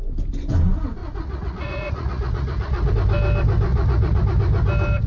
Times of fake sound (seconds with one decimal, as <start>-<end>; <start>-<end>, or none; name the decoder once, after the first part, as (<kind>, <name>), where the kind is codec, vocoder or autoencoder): 1.0-2.9 (vocoder, Vocos); 3.7-4.2